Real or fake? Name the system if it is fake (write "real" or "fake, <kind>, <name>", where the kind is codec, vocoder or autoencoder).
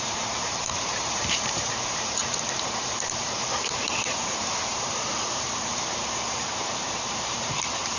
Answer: fake, vocoder, BigVGAN v2